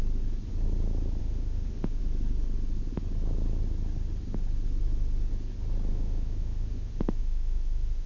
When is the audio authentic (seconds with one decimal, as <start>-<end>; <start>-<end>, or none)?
0.0-1.2; 2.0-5.9